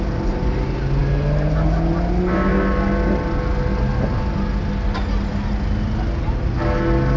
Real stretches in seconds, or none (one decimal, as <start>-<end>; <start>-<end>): 0.0-7.2